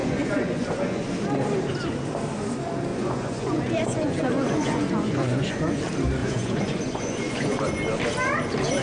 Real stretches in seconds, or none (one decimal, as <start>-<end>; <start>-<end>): 1.0-2.9; 5.8-6.2; 7.6-8.8